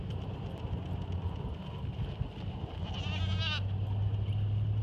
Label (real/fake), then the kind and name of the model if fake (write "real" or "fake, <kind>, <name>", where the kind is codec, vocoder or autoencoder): real